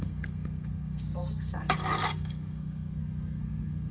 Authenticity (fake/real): fake